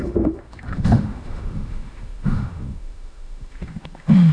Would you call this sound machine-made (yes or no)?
yes